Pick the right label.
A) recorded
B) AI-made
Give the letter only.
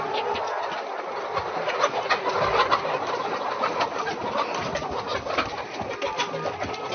A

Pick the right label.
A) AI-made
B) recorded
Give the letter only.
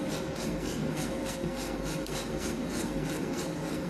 A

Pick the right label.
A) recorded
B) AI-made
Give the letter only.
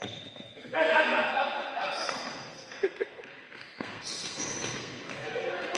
B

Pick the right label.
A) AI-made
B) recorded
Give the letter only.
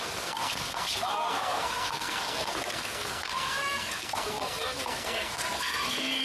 A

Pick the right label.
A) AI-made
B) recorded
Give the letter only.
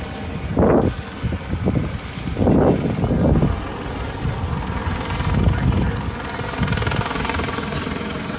B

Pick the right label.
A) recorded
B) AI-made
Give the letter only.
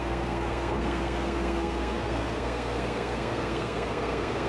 B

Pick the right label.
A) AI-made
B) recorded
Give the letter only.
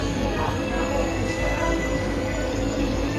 A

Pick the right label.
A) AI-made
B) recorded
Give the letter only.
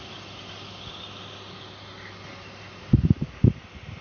B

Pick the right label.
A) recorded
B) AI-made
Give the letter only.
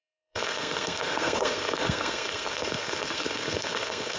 B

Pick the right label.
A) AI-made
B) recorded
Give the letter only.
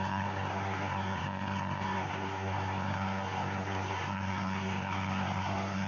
A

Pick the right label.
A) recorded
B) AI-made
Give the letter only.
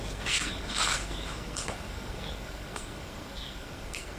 B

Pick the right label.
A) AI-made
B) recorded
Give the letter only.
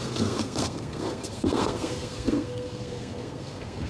A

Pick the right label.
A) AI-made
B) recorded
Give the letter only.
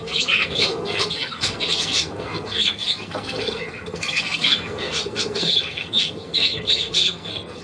A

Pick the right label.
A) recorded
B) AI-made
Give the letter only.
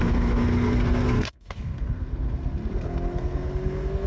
B